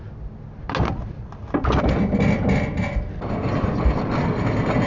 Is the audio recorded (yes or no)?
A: yes